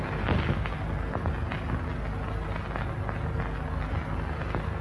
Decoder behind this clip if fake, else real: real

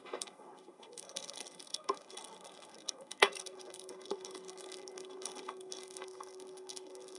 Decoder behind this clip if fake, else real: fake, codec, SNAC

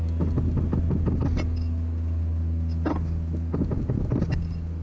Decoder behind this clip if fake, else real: real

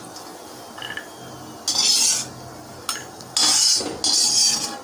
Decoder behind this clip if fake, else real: real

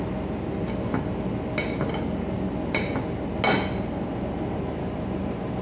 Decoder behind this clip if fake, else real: real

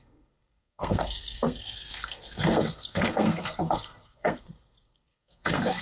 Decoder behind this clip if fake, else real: fake, codec, SNAC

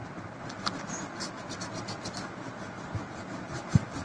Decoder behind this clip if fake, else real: real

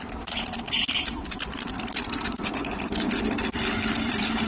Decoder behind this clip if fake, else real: fake, vocoder, BigVGAN v2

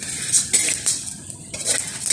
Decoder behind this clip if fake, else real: real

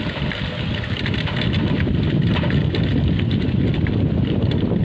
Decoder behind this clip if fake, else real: real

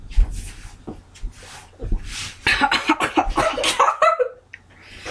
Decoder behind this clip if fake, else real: real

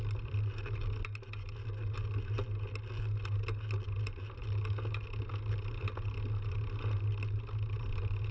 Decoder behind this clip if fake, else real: real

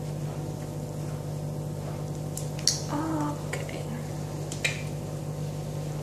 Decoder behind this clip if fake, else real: real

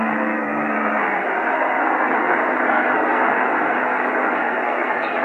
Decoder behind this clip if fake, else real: fake, codec, SNAC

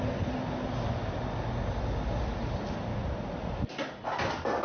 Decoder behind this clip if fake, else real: real